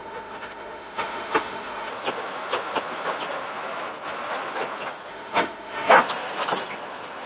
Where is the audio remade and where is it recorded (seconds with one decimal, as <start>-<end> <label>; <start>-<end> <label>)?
0.0-1.9 remade; 1.9-5.1 recorded; 5.1-6.0 remade; 6.0-7.3 recorded